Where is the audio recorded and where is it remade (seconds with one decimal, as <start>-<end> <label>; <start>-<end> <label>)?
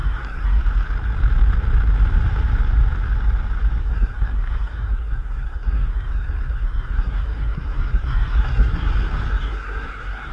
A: 0.0-0.6 remade; 0.6-3.8 recorded; 3.8-8.9 remade; 8.9-9.3 recorded; 9.3-10.3 remade